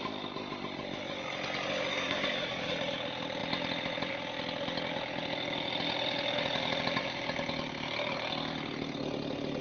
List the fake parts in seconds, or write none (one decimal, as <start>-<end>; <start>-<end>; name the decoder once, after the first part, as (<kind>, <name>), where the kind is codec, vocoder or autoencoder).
1.9-2.7 (codec, DAC)